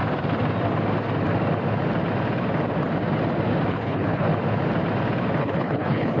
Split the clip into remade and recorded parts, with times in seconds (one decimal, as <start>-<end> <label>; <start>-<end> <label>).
0.0-3.7 recorded; 3.7-4.3 remade; 4.3-5.4 recorded; 5.4-6.2 remade